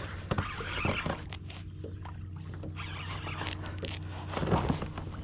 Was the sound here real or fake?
real